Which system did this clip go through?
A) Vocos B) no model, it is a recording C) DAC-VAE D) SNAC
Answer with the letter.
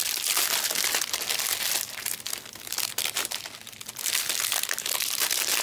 B